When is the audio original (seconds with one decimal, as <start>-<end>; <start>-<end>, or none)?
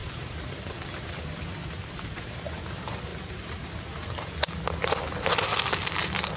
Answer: 2.5-3.1; 3.7-6.4